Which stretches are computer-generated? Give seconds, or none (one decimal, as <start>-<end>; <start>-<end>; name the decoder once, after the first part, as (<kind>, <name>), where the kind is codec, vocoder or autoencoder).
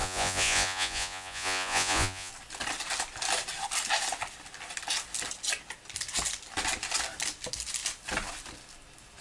0.0-2.3 (vocoder, Vocos)